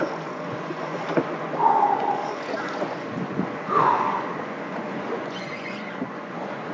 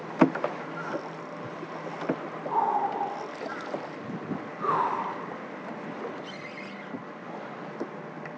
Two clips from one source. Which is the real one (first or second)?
second